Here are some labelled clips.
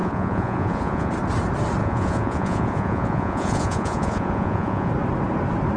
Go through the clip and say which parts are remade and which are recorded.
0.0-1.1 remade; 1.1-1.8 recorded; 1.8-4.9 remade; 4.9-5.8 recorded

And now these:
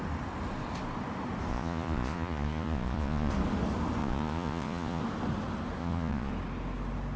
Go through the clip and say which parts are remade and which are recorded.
0.0-1.5 recorded; 1.5-3.3 remade; 3.3-4.0 recorded; 4.0-5.0 remade; 5.0-5.8 recorded; 5.8-6.3 remade; 6.3-7.2 recorded

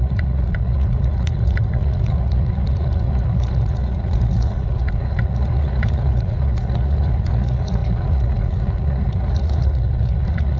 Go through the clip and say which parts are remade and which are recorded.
0.0-10.6 remade